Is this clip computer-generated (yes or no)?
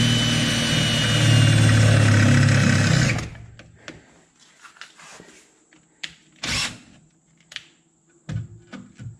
no